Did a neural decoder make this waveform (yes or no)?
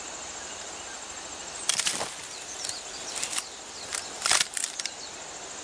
no